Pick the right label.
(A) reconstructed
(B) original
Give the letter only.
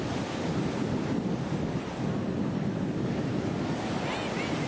B